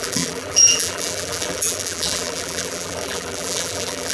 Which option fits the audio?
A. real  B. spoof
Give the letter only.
B